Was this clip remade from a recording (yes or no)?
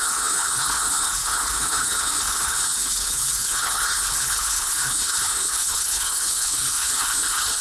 yes